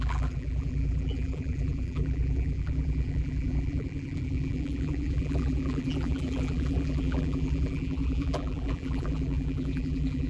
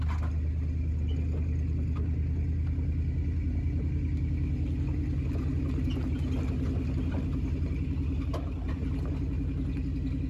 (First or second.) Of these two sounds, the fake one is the first